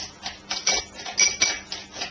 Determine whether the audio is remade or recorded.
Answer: recorded